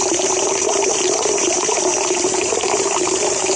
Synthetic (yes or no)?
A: yes